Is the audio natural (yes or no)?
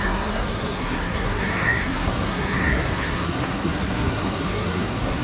no